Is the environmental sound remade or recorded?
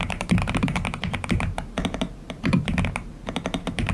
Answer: remade